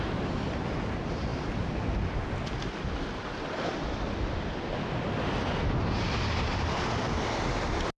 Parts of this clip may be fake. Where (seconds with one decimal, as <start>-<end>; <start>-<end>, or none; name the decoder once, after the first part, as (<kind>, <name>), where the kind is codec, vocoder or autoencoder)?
none